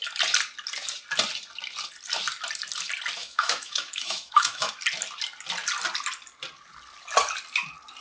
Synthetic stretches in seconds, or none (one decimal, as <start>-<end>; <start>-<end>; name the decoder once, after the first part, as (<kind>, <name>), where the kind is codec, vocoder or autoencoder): 3.2-4.7 (autoencoder, DAC-VAE)